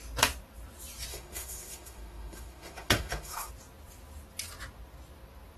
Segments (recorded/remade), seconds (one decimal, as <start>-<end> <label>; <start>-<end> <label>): 0.0-1.1 recorded; 1.1-3.5 remade; 3.5-5.6 recorded